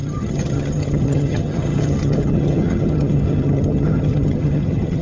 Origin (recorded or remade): remade